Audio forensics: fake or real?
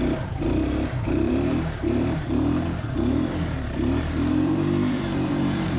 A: fake